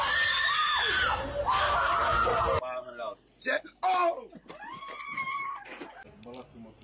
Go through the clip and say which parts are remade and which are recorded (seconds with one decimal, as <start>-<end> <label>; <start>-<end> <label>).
0.0-6.8 recorded